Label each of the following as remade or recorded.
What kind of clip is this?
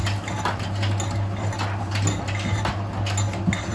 recorded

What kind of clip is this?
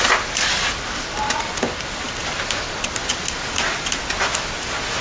recorded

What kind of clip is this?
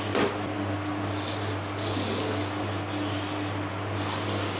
recorded